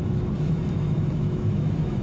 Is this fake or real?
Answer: fake